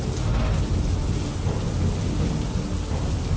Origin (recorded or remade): recorded